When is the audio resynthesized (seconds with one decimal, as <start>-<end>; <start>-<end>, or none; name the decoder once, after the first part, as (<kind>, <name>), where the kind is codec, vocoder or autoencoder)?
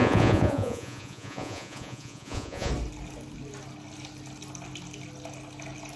0.0-2.7 (vocoder, Vocos)